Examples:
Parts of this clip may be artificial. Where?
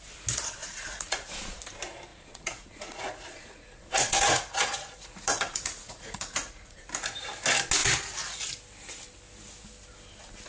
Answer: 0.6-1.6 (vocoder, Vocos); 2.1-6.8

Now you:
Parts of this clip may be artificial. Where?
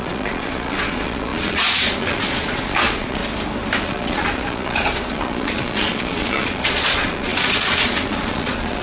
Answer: 0.0-3.2 (vocoder, Vocos); 3.8-8.8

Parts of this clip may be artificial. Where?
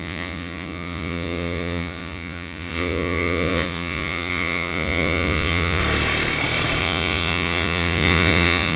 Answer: 0.0-5.8 (vocoder, Vocos); 6.8-8.8